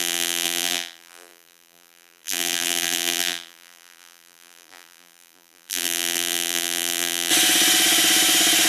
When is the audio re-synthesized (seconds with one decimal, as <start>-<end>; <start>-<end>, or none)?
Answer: 0.0-7.3

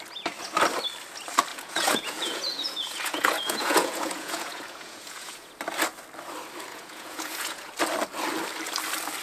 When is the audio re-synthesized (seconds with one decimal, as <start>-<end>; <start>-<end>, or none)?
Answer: 1.5-5.5; 6.7-7.7